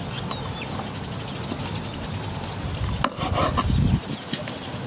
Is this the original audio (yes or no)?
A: yes